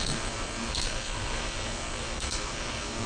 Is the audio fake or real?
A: fake